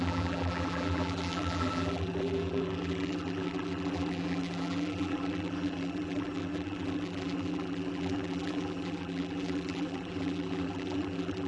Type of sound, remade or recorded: remade